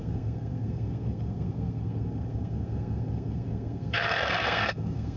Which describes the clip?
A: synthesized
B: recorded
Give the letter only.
A